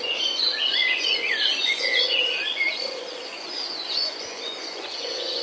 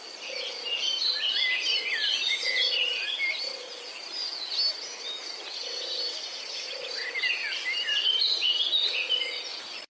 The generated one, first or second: first